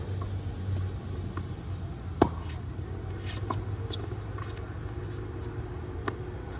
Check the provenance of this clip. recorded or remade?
recorded